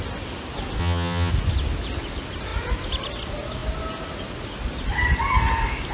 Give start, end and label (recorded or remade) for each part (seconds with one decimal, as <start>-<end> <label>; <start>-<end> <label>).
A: 0.0-0.8 recorded; 0.8-1.3 remade; 1.3-5.9 recorded